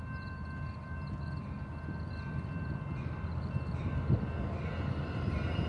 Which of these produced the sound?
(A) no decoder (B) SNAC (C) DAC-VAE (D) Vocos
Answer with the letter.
A